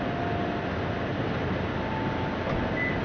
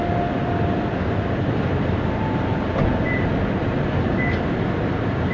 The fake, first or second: second